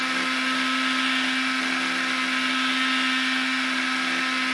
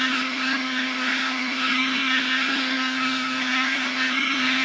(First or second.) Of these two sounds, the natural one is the first